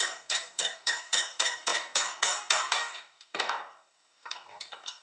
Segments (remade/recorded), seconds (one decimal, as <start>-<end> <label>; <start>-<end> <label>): 0.0-5.0 remade